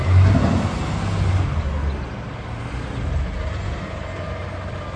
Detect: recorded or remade recorded